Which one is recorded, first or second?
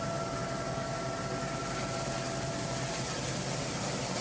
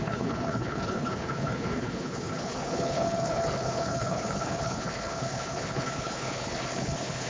first